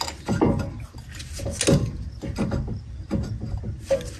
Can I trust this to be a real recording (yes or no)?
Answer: yes